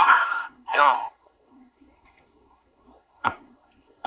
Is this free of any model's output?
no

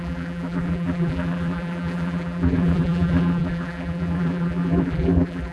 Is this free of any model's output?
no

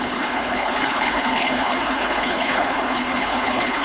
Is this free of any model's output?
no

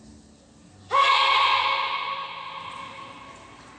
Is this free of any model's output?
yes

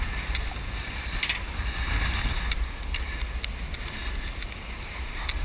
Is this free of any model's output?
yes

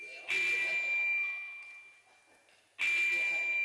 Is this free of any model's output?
yes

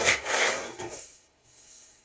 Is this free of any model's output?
no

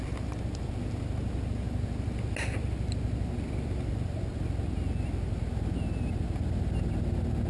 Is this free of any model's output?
yes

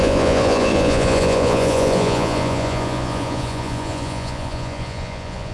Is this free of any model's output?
no